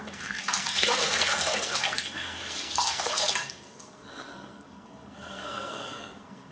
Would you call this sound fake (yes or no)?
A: yes